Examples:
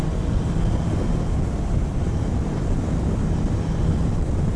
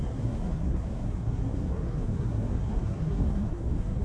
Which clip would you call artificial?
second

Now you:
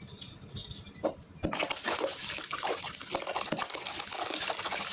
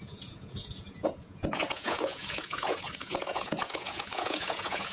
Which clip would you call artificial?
second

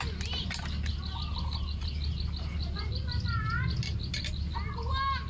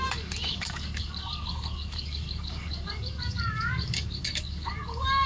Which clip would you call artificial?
second